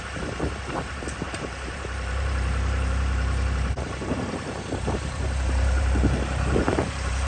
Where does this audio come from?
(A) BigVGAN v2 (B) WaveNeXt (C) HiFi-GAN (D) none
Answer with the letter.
A